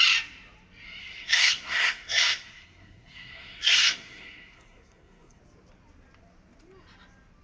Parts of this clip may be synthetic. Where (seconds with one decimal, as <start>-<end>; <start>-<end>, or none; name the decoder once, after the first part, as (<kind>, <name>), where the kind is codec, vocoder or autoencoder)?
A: 1.0-5.4 (codec, SNAC)